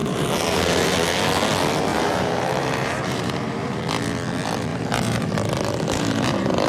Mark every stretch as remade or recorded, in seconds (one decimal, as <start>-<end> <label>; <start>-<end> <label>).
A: 0.0-0.6 remade; 0.6-1.9 recorded; 1.9-3.8 remade; 3.8-4.7 recorded; 4.7-6.7 remade